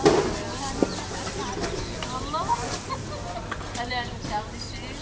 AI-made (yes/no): no